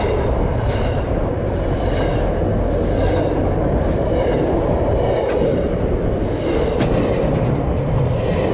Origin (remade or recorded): recorded